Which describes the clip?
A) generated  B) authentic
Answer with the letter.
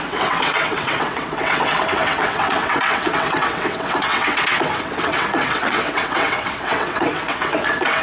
A